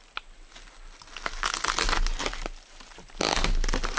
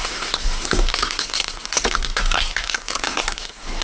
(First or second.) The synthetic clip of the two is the second